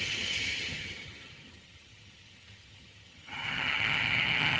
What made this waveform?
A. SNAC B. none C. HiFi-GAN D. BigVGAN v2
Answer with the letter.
C